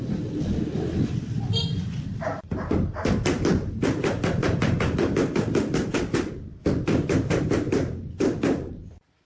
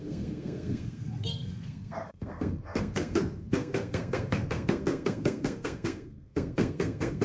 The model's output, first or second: second